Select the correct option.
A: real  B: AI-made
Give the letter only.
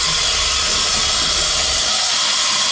A